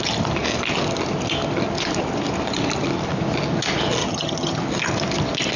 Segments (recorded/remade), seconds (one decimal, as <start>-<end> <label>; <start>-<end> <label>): 0.0-4.0 recorded; 4.0-4.6 remade; 4.6-5.6 recorded